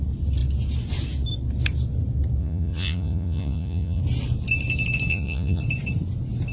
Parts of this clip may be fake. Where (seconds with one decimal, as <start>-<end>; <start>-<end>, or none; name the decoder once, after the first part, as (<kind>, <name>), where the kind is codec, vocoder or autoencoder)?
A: 2.4-4.0 (vocoder, Vocos); 5.1-5.6